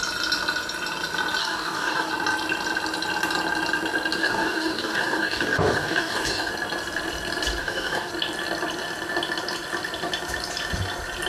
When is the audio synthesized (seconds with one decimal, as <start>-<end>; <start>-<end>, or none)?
1.4-2.1; 4.2-6.5; 7.6-8.1